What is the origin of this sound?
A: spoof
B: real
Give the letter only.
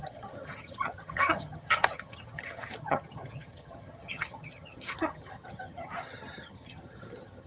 A